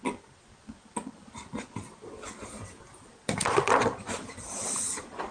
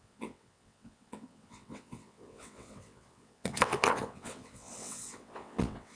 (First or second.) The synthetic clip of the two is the second